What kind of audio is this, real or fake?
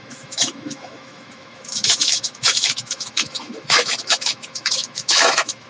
fake